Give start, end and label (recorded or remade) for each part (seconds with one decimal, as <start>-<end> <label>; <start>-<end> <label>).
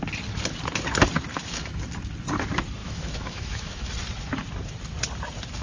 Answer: 0.0-1.3 recorded; 1.3-1.9 remade; 1.9-2.8 recorded; 2.8-3.9 remade; 3.9-5.6 recorded